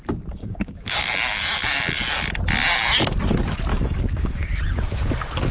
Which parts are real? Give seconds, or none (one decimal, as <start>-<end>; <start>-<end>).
0.0-0.4; 1.0-3.7; 4.6-5.5